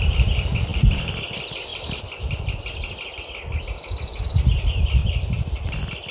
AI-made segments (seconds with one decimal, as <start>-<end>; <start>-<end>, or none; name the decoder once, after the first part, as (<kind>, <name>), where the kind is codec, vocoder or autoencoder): 0.7-1.2 (vocoder, BigVGAN v2); 5.0-5.6